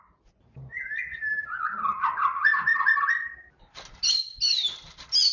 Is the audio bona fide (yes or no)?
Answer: yes